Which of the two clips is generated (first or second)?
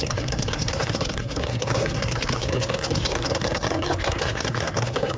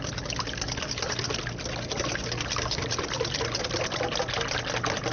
first